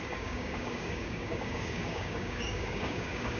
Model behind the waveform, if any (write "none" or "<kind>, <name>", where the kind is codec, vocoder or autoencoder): codec, DAC